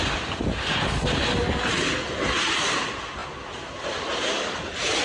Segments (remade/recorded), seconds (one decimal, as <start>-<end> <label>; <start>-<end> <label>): 0.0-5.0 recorded